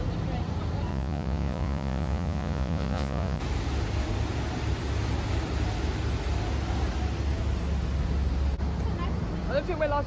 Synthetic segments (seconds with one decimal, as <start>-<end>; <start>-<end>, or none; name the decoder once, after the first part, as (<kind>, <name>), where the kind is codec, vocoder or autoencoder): 0.9-3.4 (vocoder, Vocos)